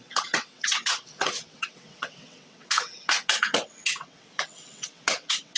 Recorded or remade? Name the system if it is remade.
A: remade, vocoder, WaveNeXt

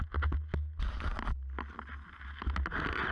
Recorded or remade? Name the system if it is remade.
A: recorded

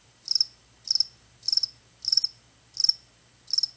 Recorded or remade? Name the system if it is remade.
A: remade, vocoder, BigVGAN v2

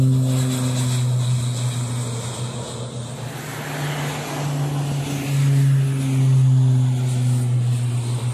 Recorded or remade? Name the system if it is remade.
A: recorded